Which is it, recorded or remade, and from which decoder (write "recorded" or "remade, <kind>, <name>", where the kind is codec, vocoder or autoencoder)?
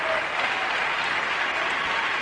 recorded